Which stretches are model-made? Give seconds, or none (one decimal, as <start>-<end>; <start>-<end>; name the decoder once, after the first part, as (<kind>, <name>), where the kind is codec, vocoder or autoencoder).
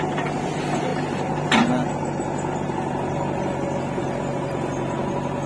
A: none